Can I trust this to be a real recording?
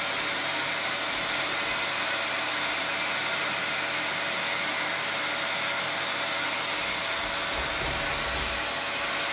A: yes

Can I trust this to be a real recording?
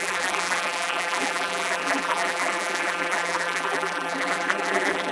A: no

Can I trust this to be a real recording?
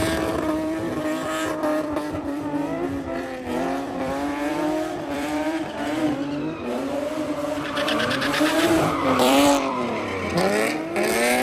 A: no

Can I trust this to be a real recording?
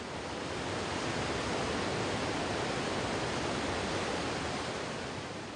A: yes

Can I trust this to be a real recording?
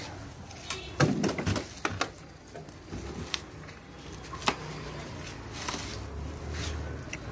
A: yes